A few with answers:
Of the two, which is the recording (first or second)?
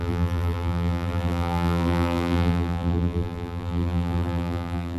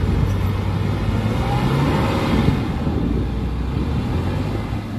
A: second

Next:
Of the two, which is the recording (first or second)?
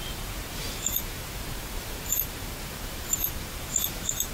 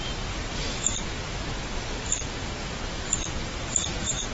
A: second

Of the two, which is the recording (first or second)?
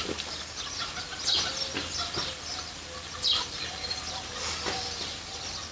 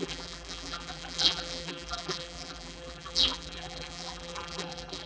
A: first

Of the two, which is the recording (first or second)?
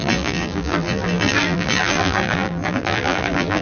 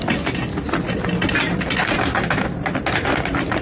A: second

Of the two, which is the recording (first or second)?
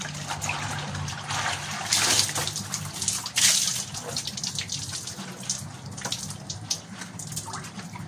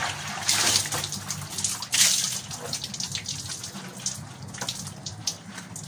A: second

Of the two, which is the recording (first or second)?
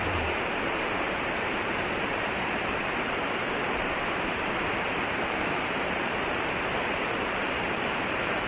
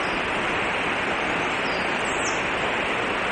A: second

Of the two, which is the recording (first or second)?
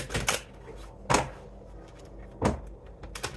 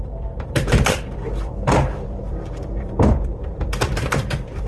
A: first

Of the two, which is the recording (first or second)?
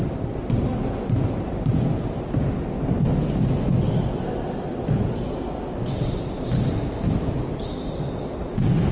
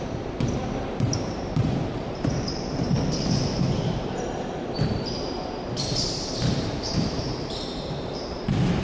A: first